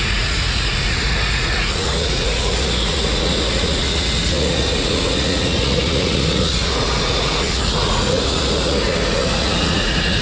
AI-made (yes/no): yes